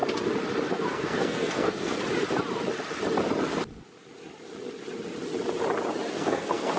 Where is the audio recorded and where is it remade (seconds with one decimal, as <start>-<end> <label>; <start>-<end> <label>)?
0.0-0.7 recorded; 0.7-2.0 remade; 2.0-6.1 recorded; 6.1-6.8 remade